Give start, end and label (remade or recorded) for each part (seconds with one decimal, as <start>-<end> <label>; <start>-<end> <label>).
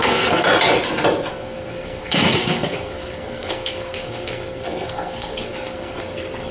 0.0-0.5 remade; 0.5-1.3 recorded; 1.3-6.5 remade